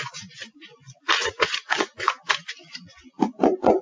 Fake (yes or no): yes